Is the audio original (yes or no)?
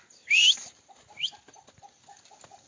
yes